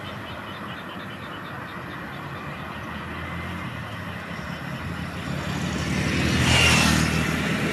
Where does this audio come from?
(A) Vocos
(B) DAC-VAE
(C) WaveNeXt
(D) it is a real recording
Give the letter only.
D